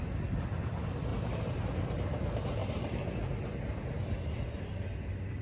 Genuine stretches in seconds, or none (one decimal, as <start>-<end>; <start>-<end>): 0.0-1.1; 1.7-2.6; 3.9-5.4